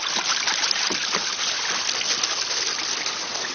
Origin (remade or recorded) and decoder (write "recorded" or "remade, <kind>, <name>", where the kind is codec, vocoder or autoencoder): recorded